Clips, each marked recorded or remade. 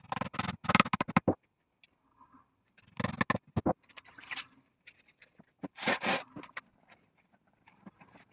recorded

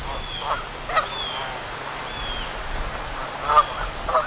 recorded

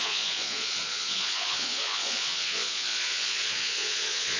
remade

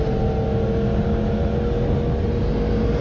recorded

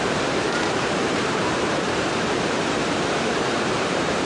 remade